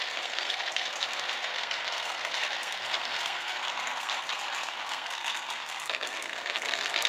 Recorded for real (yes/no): no